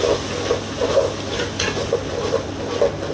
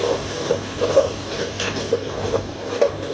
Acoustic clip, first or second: first